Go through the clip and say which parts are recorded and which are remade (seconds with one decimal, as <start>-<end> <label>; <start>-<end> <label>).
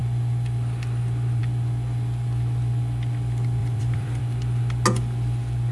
0.0-3.6 recorded; 3.6-4.2 remade; 4.2-5.7 recorded